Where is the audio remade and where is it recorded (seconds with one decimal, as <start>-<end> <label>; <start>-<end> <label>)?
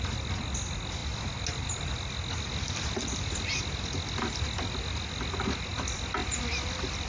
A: 0.0-7.1 recorded